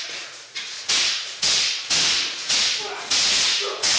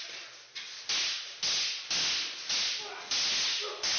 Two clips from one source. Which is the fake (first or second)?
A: first